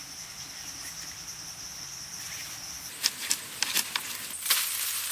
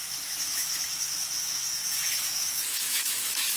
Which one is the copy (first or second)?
second